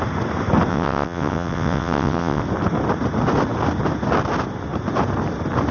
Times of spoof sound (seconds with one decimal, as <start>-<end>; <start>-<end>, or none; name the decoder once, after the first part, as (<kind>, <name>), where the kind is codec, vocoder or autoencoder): 0.7-2.4 (vocoder, WaveNeXt)